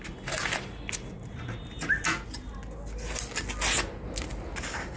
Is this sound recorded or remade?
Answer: recorded